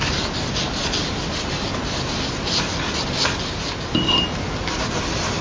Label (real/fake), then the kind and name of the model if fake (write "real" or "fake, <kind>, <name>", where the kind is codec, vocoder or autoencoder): real